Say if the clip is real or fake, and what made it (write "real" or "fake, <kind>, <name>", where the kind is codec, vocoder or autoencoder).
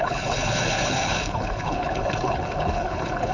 fake, codec, HILCodec